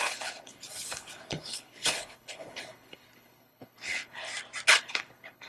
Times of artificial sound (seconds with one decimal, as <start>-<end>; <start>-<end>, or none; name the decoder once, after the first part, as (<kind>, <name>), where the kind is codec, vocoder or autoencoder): 0.0-4.2 (codec, HILCodec); 4.8-5.5